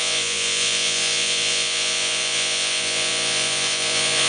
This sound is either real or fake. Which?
fake